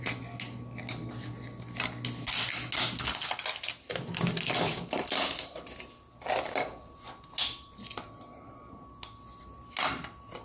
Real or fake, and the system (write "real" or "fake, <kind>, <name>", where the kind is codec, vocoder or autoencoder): real